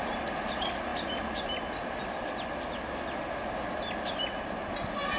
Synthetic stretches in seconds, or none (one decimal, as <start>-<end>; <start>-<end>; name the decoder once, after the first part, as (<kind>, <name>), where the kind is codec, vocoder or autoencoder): none